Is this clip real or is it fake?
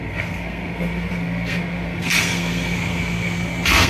fake